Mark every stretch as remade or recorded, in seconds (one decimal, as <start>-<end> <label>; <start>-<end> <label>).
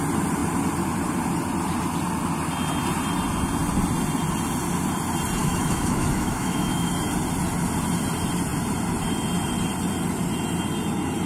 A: 0.0-5.4 recorded; 5.4-6.9 remade; 6.9-11.3 recorded